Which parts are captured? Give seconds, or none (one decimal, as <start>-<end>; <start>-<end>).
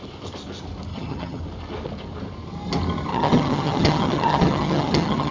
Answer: 0.0-0.9; 1.4-3.1